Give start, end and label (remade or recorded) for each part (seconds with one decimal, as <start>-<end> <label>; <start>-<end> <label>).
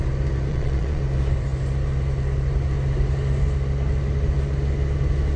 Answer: 0.0-0.5 recorded; 0.5-1.0 remade; 1.0-5.4 recorded